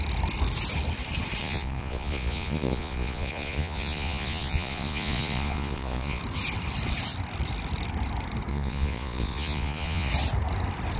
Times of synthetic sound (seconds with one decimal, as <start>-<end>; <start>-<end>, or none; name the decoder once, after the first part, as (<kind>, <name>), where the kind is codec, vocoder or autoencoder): 1.4-6.2 (vocoder, Vocos); 8.5-10.1

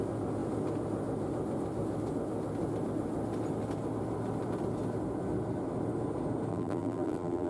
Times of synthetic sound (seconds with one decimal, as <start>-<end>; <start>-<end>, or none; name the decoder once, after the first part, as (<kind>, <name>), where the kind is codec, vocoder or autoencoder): 6.5-7.5 (vocoder, BigVGAN v2)

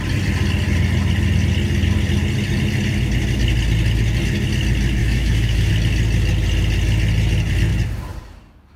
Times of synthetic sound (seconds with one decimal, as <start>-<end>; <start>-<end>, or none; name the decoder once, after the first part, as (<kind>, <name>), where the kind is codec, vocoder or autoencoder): 5.0-5.7 (autoencoder, DAC-VAE)

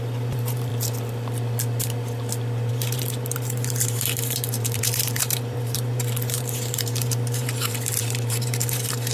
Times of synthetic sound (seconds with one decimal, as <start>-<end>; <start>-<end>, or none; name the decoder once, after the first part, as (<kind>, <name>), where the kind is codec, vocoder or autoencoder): 0.0-0.7 (vocoder, BigVGAN v2); 2.7-9.1

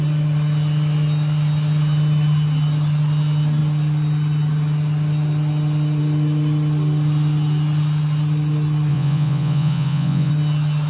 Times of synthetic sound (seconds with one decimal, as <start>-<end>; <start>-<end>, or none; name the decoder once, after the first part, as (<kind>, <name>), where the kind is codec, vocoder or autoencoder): 8.9-10.3 (vocoder, Vocos)